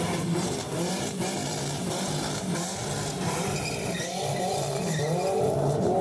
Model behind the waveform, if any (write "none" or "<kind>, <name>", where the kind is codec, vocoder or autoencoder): vocoder, BigVGAN v2